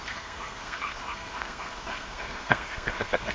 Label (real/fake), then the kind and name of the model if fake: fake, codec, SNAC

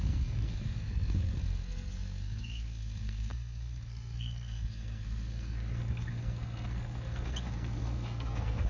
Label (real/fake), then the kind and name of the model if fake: fake, codec, SNAC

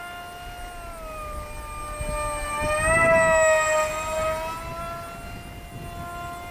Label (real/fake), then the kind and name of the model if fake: real